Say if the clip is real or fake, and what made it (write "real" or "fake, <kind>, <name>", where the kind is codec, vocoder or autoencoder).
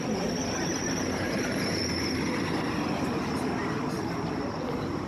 real